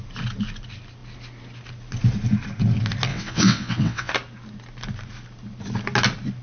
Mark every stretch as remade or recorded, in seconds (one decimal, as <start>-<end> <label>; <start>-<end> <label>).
0.0-3.1 recorded; 3.1-4.1 remade; 4.1-6.4 recorded

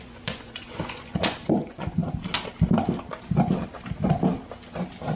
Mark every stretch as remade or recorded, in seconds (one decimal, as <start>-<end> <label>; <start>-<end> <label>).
0.0-2.0 remade; 2.0-5.2 recorded

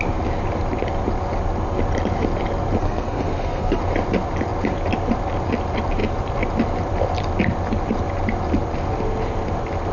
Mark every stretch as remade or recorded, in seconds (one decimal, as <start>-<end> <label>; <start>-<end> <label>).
0.0-2.8 recorded; 2.8-3.8 remade; 3.8-9.9 recorded

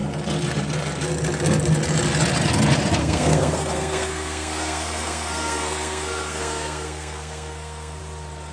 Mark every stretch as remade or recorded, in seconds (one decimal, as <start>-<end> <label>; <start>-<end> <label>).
0.0-3.0 recorded; 3.0-8.0 remade; 8.0-8.5 recorded